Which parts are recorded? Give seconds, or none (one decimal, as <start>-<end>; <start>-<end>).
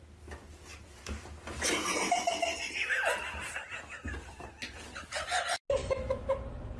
0.0-5.8; 6.3-6.8